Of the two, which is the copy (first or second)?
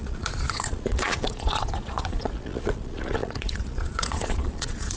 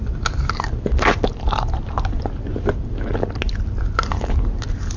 first